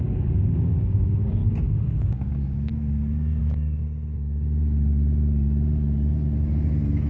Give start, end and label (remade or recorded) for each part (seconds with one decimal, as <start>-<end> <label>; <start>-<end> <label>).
0.0-1.4 remade; 1.4-1.9 recorded; 1.9-2.7 remade; 2.7-3.4 recorded; 3.4-3.8 remade; 3.8-7.1 recorded